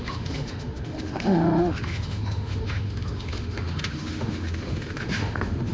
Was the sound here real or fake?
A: fake